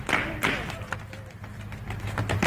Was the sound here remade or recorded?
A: recorded